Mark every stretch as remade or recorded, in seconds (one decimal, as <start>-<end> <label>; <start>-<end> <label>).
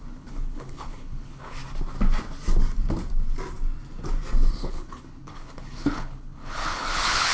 0.0-1.6 remade; 1.6-4.5 recorded; 4.5-7.3 remade